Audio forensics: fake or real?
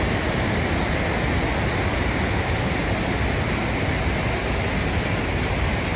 real